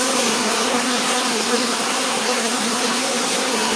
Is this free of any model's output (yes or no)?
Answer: no